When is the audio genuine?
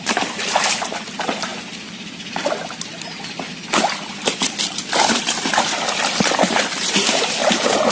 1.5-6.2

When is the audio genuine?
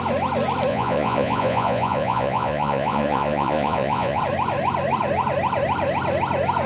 0.0-0.7; 4.2-6.7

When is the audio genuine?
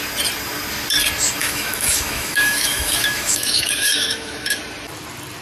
0.0-1.4; 4.6-5.4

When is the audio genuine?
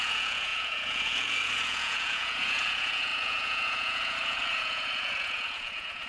none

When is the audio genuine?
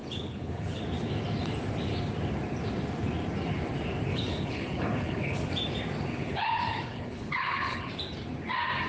0.8-4.1; 5.5-6.1; 7.9-8.9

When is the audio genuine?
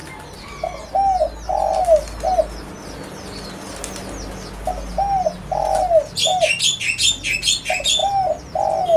0.0-9.0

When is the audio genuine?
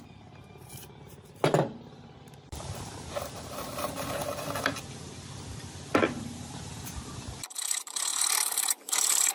4.2-6.2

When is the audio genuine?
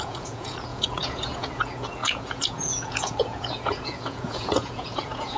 none